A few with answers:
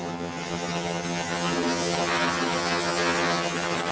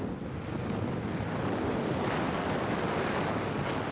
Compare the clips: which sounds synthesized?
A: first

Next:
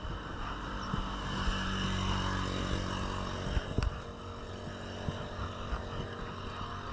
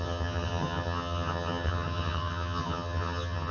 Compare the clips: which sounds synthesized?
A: second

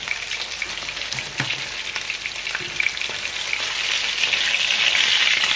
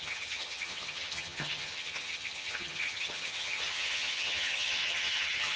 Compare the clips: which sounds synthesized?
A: second